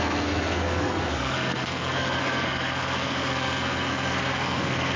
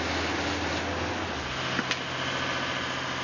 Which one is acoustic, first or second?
second